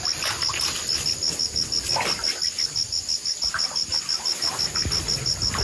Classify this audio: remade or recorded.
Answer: recorded